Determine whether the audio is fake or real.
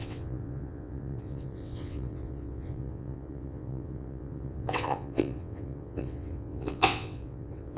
fake